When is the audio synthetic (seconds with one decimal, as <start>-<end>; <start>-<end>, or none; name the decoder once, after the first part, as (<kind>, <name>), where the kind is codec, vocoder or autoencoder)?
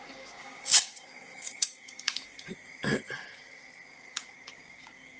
0.0-2.5 (codec, DAC); 3.9-5.2